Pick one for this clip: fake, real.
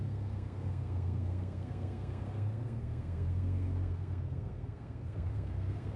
fake